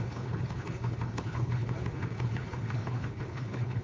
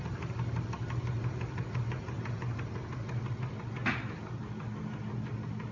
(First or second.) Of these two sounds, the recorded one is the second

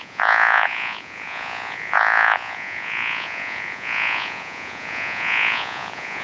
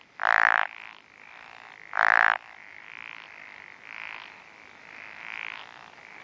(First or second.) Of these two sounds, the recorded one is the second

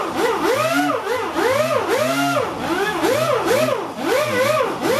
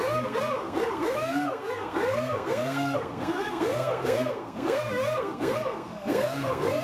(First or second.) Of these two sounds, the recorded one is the first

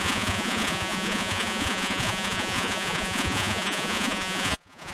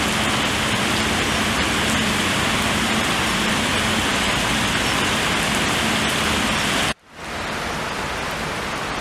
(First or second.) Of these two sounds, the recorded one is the second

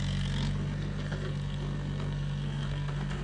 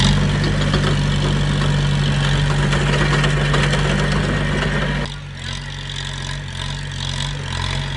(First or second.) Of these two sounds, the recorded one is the second